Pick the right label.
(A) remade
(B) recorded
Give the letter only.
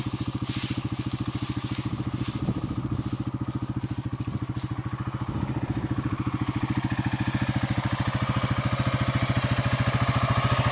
B